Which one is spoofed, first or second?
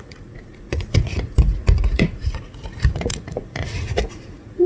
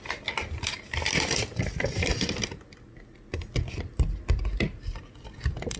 first